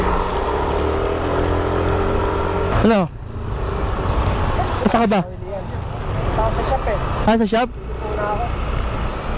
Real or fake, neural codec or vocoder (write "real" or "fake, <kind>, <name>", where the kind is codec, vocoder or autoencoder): real